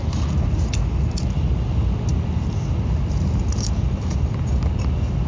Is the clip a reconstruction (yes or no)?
no